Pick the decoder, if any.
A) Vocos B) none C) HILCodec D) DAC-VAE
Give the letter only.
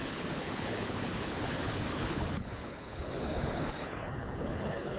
C